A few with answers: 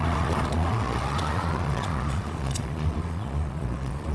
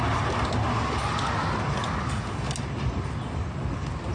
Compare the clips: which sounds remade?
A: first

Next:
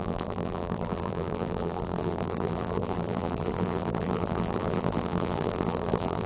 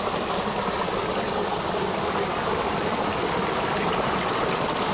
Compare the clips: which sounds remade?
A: first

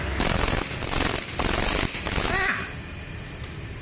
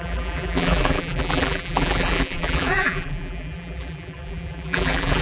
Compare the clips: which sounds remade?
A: second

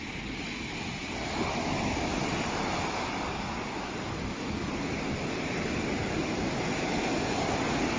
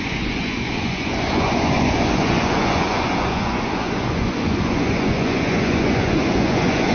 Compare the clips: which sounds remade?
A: second